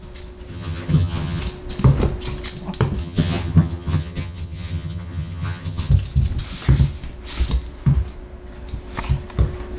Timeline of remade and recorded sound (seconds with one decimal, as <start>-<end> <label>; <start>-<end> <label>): 0.0-0.5 recorded; 0.5-1.4 remade; 1.4-3.0 recorded; 3.0-5.9 remade; 5.9-9.8 recorded